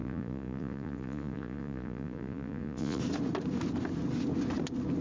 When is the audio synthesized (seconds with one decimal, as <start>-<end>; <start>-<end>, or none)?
0.0-3.0

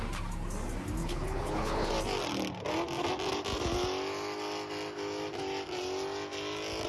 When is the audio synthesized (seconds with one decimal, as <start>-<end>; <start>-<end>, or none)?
1.0-1.9